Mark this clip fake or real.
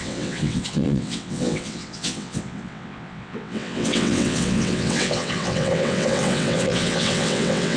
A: fake